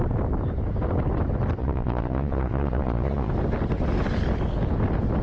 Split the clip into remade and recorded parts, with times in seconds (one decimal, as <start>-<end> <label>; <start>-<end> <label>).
0.0-1.6 recorded; 1.6-3.3 remade; 3.3-5.2 recorded